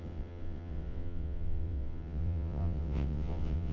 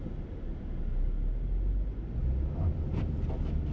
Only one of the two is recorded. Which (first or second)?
second